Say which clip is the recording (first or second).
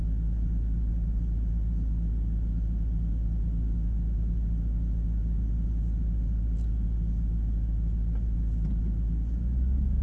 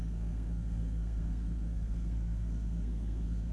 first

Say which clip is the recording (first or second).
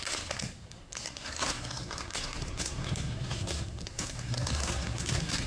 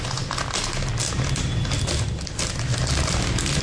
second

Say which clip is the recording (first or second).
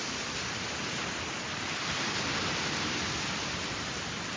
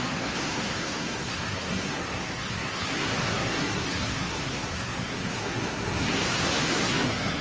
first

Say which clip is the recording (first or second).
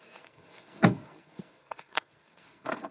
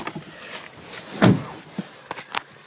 second